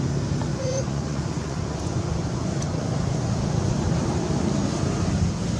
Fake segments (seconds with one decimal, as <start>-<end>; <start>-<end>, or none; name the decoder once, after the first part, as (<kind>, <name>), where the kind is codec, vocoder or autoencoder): 0.5-3.9 (vocoder, Vocos)